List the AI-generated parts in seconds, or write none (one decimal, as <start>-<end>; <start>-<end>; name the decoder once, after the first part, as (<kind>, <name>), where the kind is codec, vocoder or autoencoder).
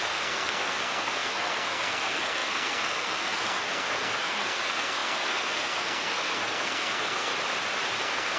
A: 0.0-7.3 (codec, SNAC); 8.0-8.4